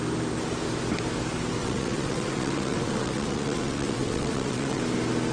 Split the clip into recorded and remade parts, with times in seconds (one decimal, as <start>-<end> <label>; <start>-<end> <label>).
0.0-1.6 recorded; 1.6-4.8 remade; 4.8-5.3 recorded